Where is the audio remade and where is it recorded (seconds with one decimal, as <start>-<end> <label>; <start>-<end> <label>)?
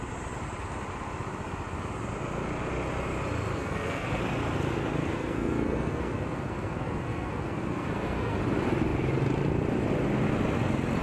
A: 0.0-3.5 recorded; 3.5-4.2 remade; 4.2-5.0 recorded; 5.0-8.4 remade; 8.4-11.0 recorded